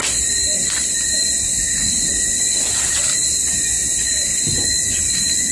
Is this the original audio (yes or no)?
yes